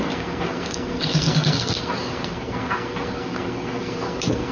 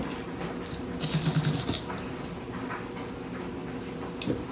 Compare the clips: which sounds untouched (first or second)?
second